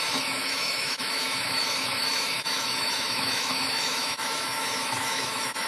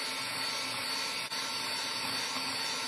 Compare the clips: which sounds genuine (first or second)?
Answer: second